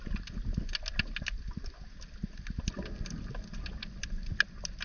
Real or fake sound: real